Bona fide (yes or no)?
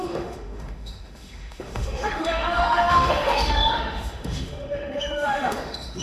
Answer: no